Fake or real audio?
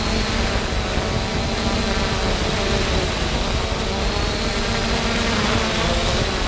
real